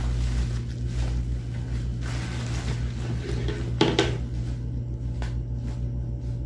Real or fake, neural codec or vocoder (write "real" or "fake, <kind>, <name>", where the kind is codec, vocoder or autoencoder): real